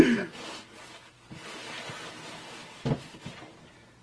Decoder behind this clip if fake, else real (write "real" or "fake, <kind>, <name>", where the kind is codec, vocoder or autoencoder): real